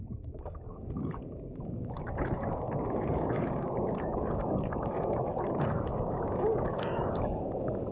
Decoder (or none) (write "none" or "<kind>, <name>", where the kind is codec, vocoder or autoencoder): codec, DAC